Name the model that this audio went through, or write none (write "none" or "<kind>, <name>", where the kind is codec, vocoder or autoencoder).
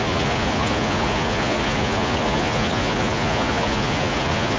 vocoder, Vocos